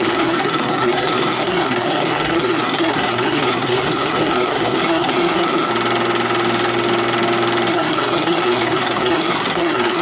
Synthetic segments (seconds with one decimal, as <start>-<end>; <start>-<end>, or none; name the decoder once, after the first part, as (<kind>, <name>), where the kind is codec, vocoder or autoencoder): 0.0-5.7 (codec, SNAC); 7.7-10.0